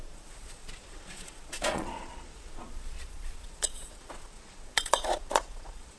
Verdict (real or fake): fake